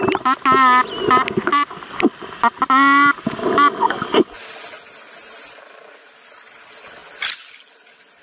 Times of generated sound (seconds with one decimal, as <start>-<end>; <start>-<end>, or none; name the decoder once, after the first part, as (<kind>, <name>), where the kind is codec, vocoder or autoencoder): none

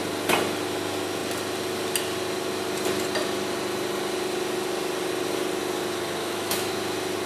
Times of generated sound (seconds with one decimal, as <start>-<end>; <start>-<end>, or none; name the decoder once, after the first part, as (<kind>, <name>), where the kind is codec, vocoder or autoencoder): 6.2-6.7 (autoencoder, DAC-VAE)

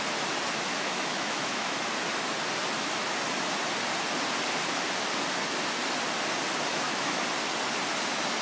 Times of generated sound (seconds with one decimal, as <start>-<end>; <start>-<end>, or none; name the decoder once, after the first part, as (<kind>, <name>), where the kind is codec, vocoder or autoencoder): 0.7-1.9 (autoencoder, DAC-VAE); 6.7-7.2